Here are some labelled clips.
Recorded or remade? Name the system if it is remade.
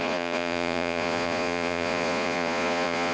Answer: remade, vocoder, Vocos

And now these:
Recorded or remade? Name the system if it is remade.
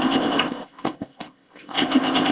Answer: remade, codec, ZipCodec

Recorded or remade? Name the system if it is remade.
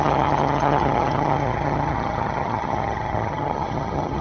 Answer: remade, vocoder, HiFi-GAN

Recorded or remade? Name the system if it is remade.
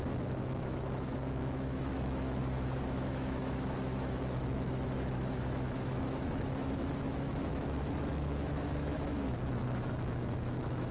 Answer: remade, autoencoder, DAC-VAE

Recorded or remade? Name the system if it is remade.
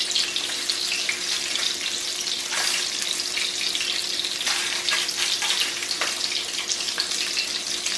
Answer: recorded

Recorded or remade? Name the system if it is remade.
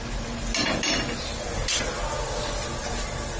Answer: recorded